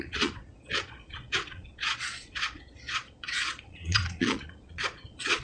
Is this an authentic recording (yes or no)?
no